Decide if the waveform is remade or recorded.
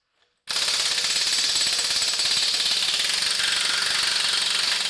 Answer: recorded